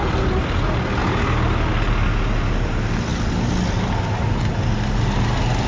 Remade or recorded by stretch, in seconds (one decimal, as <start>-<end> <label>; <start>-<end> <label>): 0.0-5.7 recorded